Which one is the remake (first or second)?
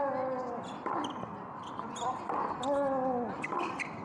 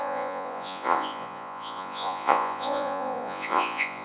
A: second